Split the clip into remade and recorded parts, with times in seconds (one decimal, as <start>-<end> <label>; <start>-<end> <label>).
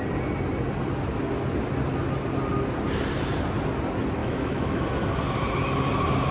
0.0-4.2 recorded; 4.2-4.8 remade; 4.8-6.3 recorded